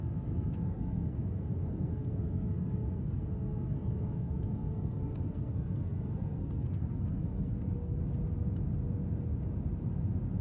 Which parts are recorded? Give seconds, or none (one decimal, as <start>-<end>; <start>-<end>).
8.0-10.4